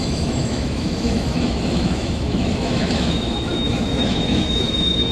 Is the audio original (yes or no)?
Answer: no